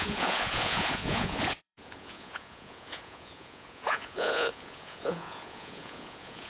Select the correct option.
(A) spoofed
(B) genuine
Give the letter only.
A